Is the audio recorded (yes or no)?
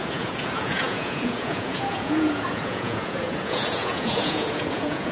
no